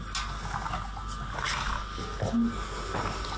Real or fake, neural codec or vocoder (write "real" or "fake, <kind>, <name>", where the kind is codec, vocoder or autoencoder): real